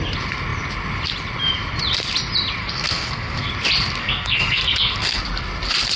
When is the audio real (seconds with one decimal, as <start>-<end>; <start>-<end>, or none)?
0.0-2.6; 3.5-4.0; 5.2-6.0